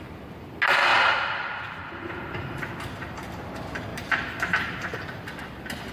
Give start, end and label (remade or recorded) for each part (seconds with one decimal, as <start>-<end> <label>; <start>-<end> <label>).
0.0-0.9 recorded; 0.9-3.4 remade; 3.4-3.9 recorded; 3.9-5.3 remade; 5.3-5.9 recorded